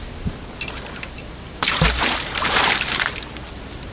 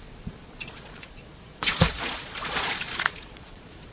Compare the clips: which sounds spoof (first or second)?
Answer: second